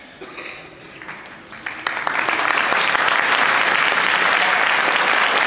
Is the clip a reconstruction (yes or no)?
no